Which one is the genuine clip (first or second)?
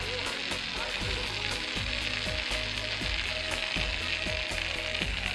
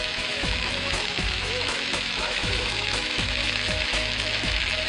first